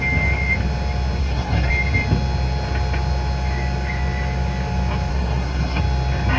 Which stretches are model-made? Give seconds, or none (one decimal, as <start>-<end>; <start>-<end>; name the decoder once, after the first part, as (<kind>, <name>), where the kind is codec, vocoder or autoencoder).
1.2-1.7 (codec, SNAC); 5.1-5.8